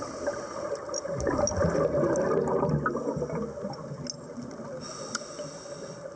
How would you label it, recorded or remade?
recorded